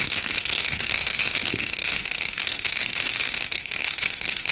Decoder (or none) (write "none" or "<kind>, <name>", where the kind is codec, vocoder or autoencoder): autoencoder, DAC-VAE